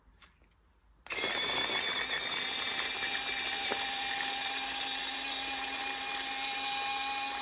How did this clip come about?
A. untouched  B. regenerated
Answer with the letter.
A